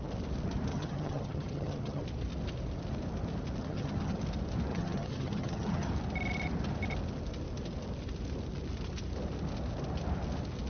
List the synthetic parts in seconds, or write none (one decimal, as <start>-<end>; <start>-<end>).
0.7-2.0; 3.6-4.2; 4.7-5.9